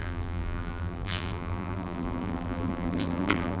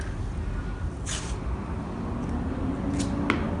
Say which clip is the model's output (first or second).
first